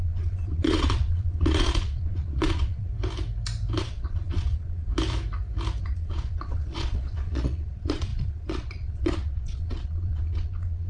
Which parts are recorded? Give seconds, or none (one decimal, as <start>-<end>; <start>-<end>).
2.9-3.8; 4.9-5.8